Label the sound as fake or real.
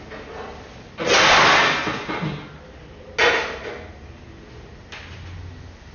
real